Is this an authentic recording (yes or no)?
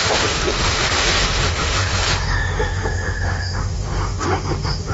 no